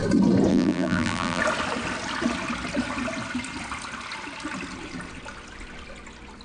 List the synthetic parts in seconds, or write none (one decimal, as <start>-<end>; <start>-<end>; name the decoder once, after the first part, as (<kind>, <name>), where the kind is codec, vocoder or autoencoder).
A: 0.5-1.4 (vocoder, BigVGAN v2)

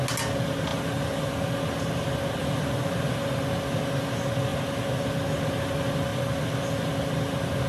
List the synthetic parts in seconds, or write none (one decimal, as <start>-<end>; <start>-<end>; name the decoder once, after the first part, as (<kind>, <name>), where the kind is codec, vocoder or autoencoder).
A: 0.7-1.3 (vocoder, BigVGAN v2); 2.4-3.2

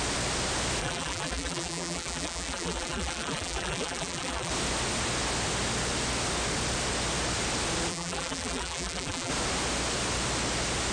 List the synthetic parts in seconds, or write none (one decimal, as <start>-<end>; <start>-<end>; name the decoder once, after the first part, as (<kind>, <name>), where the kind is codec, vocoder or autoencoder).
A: 0.8-4.5 (vocoder, BigVGAN v2); 7.9-9.3

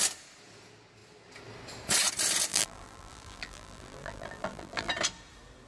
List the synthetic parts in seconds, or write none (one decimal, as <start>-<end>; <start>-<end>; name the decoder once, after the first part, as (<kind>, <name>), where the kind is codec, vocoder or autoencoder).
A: 2.5-4.9 (vocoder, BigVGAN v2)

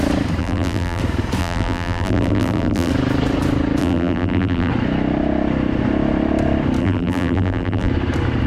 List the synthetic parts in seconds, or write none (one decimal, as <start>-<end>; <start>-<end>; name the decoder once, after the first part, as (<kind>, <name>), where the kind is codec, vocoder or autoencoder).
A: 0.4-1.0 (vocoder, BigVGAN v2); 1.4-2.9; 3.8-4.7; 6.8-7.9

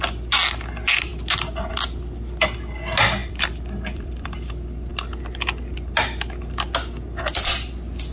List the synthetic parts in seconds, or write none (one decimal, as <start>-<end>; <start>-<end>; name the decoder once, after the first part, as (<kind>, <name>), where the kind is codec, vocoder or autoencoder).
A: 3.2-4.5 (vocoder, BigVGAN v2)

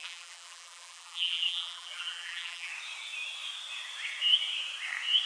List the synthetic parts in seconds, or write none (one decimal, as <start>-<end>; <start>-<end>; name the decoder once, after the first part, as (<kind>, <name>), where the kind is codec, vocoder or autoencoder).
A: 0.0-2.7 (vocoder, BigVGAN v2)

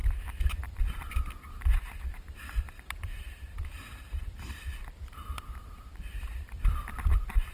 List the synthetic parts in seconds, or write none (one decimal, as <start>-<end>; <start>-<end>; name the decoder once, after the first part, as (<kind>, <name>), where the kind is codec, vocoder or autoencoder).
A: 3.5-7.5 (vocoder, BigVGAN v2)